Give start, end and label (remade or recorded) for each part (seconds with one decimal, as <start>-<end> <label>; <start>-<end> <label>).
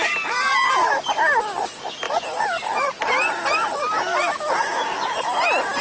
0.0-0.5 recorded; 0.5-1.2 remade; 1.2-5.8 recorded